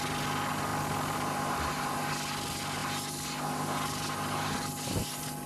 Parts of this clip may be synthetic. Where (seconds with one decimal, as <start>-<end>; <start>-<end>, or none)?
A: none